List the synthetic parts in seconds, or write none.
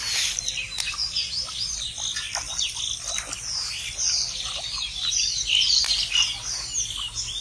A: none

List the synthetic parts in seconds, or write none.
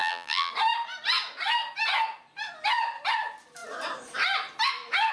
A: 0.0-0.5 (vocoder, BigVGAN v2)